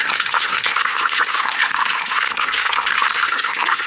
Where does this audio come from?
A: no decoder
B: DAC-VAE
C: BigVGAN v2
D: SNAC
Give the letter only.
D